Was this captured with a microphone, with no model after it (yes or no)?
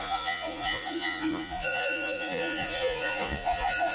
no